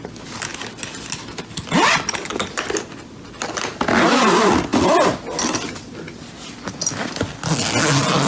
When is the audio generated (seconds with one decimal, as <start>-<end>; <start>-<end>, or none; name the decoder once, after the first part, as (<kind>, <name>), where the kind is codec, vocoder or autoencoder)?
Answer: none